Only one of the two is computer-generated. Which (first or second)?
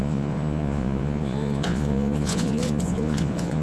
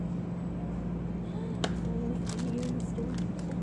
first